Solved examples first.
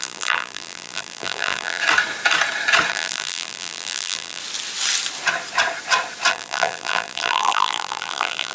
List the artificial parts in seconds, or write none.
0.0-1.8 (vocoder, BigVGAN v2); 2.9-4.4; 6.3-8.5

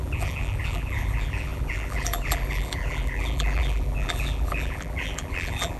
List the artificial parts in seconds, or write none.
0.0-5.8 (vocoder, BigVGAN v2)

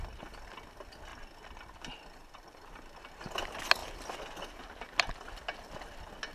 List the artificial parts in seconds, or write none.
2.2-3.3 (vocoder, BigVGAN v2)

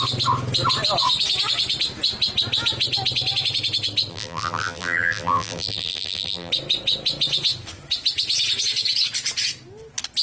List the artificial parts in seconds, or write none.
4.1-6.5 (vocoder, BigVGAN v2)